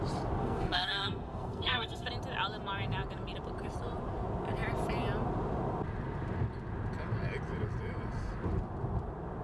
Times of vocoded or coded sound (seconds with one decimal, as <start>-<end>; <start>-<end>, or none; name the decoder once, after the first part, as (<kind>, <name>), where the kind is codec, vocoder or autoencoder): 0.4-2.1 (codec, SNAC)